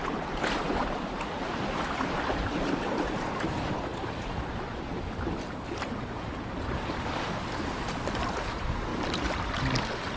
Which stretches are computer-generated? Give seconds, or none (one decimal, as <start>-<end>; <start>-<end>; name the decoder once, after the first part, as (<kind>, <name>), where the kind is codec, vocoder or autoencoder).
none